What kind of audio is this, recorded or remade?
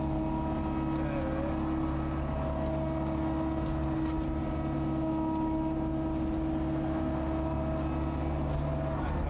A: recorded